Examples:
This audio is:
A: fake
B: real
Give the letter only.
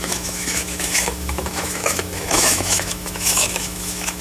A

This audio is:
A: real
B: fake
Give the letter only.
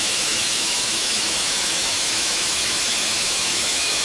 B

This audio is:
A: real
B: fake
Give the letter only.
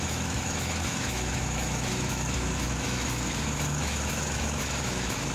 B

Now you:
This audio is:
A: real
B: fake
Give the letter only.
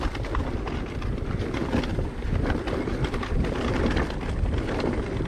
A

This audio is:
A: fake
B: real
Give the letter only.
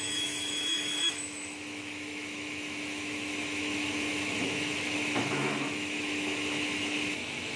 A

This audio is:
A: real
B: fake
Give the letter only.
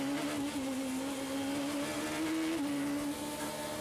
A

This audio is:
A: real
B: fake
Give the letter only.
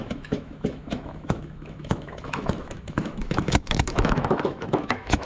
B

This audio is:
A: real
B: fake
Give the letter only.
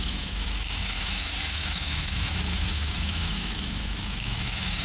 B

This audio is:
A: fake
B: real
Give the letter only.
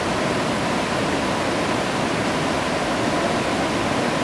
B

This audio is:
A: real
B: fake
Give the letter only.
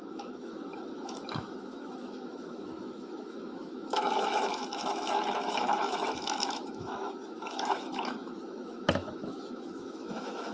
B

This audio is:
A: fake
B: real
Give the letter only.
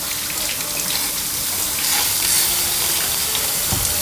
B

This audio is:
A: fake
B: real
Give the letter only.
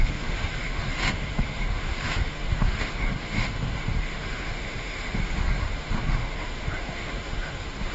A